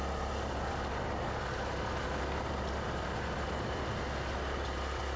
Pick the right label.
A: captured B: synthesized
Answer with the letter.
A